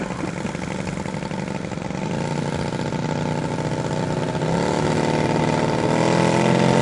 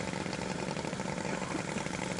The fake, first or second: second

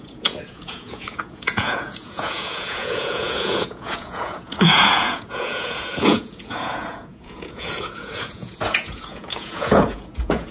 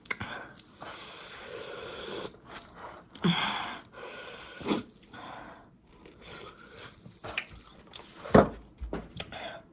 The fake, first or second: first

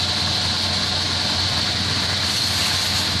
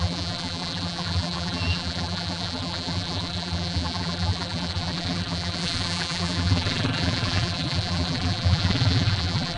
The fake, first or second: second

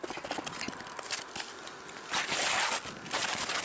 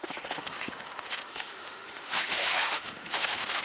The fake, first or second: second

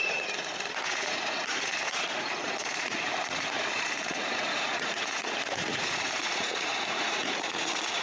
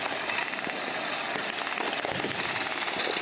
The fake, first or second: first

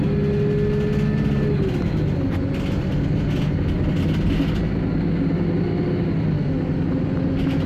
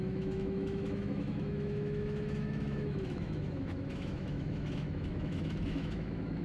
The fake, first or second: second